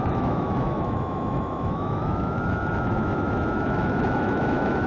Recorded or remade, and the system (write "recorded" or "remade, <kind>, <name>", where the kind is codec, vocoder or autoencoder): remade, autoencoder, DAC-VAE